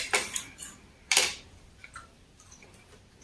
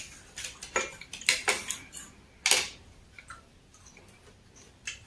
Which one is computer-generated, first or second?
first